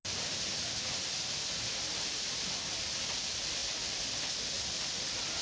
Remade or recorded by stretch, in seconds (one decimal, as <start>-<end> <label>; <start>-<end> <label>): 0.0-3.2 recorded; 3.2-5.4 remade